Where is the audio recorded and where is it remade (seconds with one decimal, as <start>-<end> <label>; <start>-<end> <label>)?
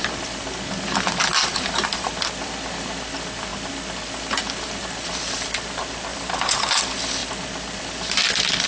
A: 0.0-1.5 recorded; 1.5-2.1 remade; 2.1-6.1 recorded; 6.1-6.7 remade; 6.7-8.7 recorded